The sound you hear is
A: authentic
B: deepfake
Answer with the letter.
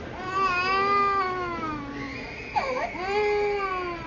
A